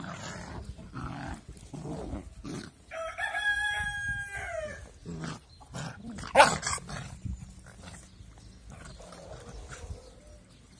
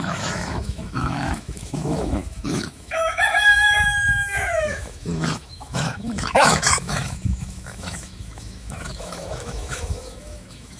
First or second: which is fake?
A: second